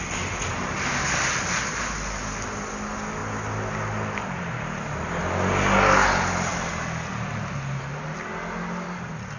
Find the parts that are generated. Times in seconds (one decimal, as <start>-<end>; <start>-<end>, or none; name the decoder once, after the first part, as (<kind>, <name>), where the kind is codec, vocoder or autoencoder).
none